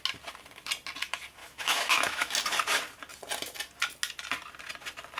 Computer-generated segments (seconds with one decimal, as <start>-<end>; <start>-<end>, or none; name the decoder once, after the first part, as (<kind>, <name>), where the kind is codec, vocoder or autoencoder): 1.4-2.3 (autoencoder, DAC-VAE)